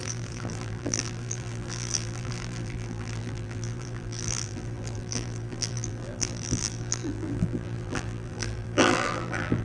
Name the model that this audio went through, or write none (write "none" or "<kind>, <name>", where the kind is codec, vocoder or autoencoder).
vocoder, BigVGAN v2